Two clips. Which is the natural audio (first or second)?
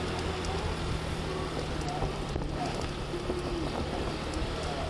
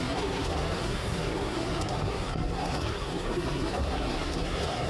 first